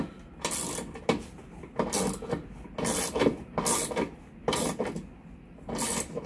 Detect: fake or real real